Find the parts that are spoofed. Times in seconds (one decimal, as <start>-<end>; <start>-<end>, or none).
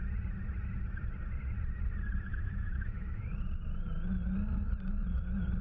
2.3-3.2